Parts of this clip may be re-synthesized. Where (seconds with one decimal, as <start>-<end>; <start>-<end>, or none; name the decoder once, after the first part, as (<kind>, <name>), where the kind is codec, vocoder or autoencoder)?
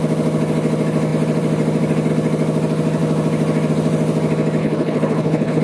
4.6-5.6 (codec, HILCodec)